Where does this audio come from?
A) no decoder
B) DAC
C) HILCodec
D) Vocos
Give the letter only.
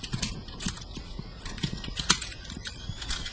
D